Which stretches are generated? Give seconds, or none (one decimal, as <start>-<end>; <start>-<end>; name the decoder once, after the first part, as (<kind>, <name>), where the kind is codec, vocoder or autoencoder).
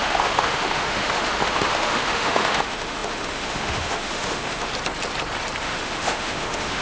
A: 0.0-4.7 (autoencoder, DAC-VAE); 5.6-6.8